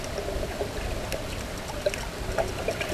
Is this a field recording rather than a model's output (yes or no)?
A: yes